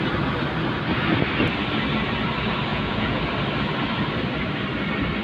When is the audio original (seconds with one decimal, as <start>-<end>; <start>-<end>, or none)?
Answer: 0.0-2.7; 3.2-5.2